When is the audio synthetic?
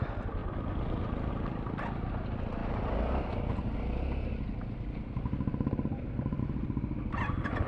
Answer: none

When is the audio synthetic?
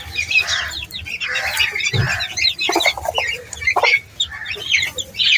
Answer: none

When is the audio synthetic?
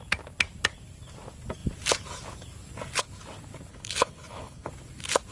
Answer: 3.7-4.7 (codec, HILCodec)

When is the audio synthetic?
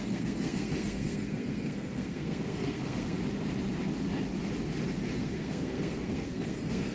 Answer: 0.0-3.2 (codec, SNAC); 5.1-6.9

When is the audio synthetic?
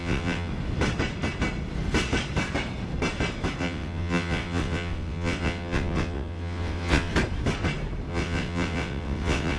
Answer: 0.0-0.5 (vocoder, WaveNeXt); 3.6-7.1; 8.1-9.6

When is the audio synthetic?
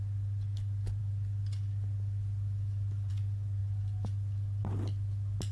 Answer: none